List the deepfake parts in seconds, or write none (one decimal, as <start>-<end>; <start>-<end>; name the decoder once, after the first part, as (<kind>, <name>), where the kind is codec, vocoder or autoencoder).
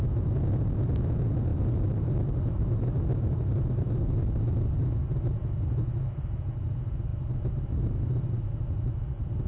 1.5-3.9 (vocoder, BigVGAN v2)